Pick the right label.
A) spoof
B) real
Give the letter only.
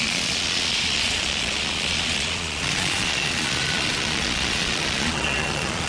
A